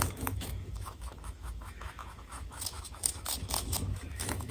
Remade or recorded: remade